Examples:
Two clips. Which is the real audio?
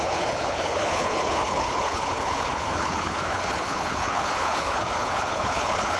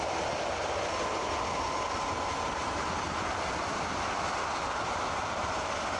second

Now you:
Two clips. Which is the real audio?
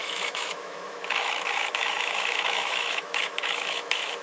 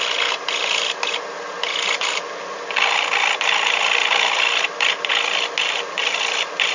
second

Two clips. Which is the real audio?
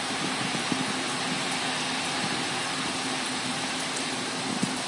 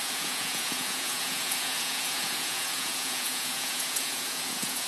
first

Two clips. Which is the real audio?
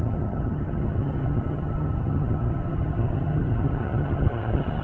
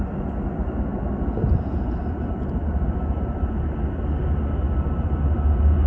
second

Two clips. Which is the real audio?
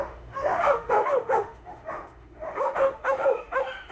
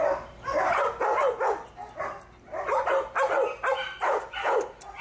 second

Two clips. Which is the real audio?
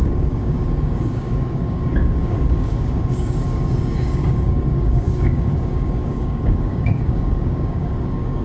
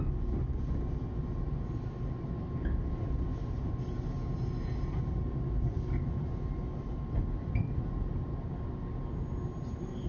second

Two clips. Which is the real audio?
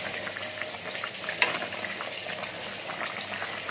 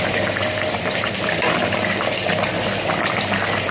first